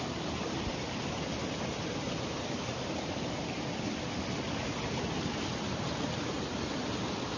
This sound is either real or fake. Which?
real